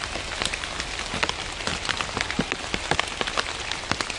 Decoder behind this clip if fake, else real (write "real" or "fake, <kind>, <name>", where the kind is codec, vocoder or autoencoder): real